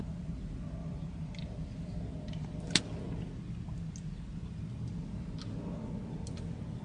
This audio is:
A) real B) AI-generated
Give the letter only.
A